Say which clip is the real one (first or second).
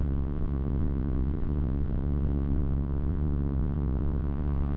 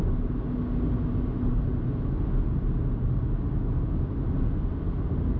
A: second